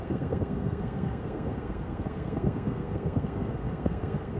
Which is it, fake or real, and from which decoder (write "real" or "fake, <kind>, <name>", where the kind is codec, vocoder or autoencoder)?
fake, codec, SNAC